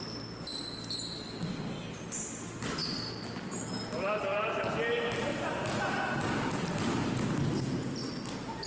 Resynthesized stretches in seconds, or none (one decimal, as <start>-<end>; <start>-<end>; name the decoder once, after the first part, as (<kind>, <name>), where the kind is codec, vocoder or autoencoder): 5.3-7.3 (vocoder, BigVGAN v2)

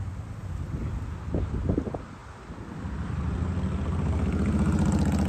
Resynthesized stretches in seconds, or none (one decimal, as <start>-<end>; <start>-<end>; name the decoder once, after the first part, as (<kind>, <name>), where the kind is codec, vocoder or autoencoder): 0.4-1.0 (vocoder, BigVGAN v2); 2.2-3.7

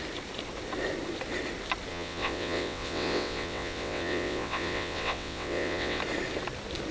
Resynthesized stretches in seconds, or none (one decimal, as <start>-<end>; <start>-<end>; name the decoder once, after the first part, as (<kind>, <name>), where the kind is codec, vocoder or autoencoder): 1.9-6.0 (vocoder, WaveNeXt)

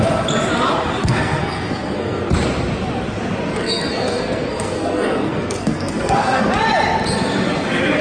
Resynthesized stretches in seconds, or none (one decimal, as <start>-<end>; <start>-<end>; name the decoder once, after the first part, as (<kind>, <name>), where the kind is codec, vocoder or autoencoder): 1.0-2.2 (codec, SNAC); 3.5-6.4

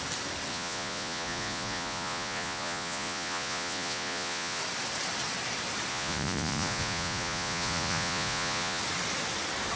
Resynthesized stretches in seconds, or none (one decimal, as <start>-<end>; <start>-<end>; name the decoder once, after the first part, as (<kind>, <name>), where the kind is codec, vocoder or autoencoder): 0.5-4.6 (vocoder, Vocos); 5.9-8.8